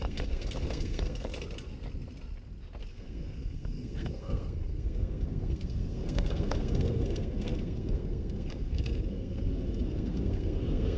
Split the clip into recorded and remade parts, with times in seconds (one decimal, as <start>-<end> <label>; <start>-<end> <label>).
0.0-1.3 remade; 1.3-2.9 recorded; 2.9-11.0 remade